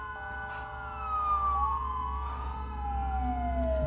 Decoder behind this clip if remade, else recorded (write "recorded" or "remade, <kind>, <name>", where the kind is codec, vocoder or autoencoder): recorded